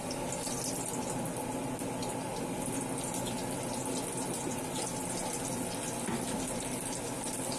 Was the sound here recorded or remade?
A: recorded